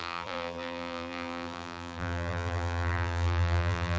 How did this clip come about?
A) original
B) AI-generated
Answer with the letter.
B